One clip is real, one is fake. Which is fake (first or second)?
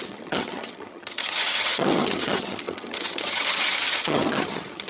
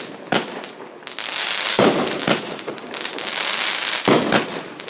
first